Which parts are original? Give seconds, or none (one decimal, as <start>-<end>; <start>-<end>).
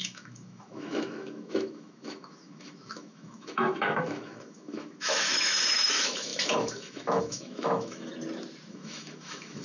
8.1-8.7